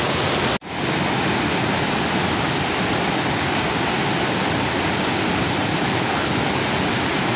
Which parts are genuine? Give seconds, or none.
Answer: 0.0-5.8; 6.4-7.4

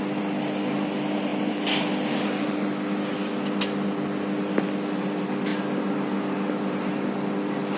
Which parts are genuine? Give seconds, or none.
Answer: 0.0-7.8

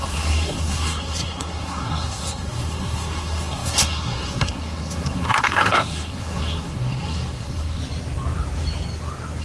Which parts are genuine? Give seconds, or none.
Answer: 7.8-9.4

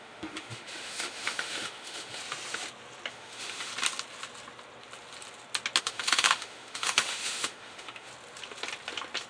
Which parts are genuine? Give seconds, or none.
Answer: 2.2-3.1; 3.7-5.8; 8.1-9.3

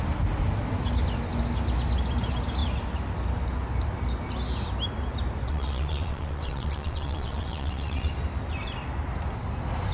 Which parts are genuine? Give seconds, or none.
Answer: 0.0-5.5; 8.1-9.9